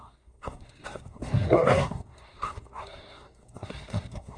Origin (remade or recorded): remade